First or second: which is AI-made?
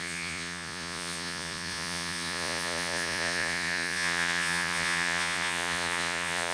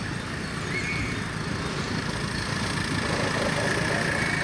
first